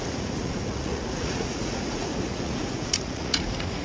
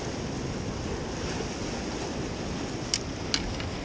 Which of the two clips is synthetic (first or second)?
first